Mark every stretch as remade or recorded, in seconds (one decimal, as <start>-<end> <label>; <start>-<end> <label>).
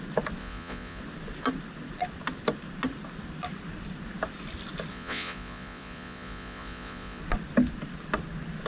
0.0-0.4 recorded; 0.4-1.0 remade; 1.0-4.9 recorded; 4.9-7.2 remade; 7.2-8.7 recorded